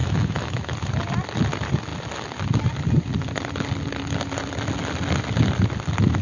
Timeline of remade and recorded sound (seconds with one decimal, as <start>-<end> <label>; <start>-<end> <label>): 0.0-0.7 remade; 0.7-6.2 recorded